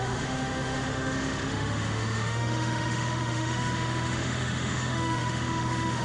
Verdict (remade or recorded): remade